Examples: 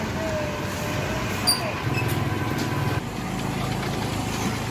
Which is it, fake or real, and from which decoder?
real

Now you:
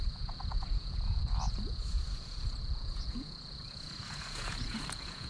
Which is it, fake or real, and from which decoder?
fake, vocoder, Vocos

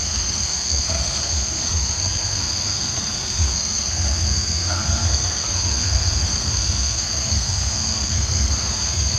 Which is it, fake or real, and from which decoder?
fake, codec, SNAC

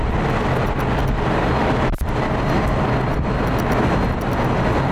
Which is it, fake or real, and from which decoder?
real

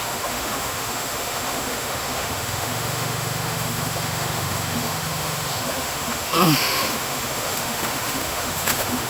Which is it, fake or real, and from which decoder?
fake, autoencoder, DAC-VAE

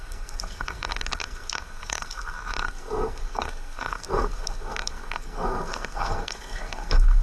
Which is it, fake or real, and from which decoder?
fake, codec, SNAC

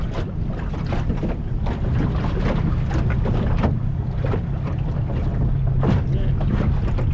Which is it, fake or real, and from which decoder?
real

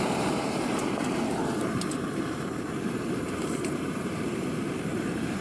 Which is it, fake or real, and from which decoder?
fake, vocoder, BigVGAN v2